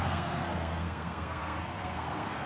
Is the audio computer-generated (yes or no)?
yes